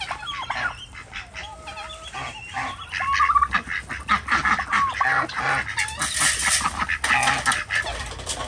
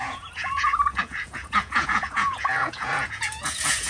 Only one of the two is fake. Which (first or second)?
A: second